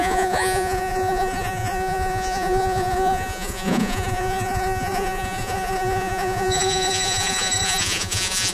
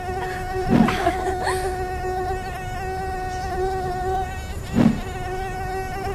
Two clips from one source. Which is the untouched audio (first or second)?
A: second